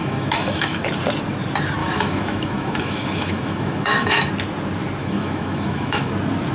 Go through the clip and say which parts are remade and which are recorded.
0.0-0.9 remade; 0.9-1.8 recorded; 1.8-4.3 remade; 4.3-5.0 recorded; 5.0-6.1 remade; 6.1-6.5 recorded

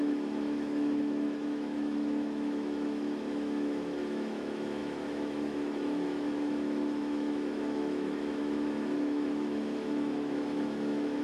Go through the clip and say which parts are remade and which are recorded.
0.0-11.2 remade

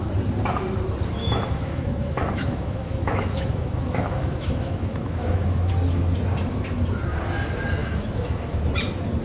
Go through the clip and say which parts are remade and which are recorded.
0.0-1.2 recorded; 1.2-5.7 remade; 5.7-7.8 recorded; 7.8-8.4 remade; 8.4-9.2 recorded